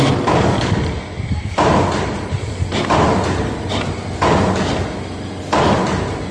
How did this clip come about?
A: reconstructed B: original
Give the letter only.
B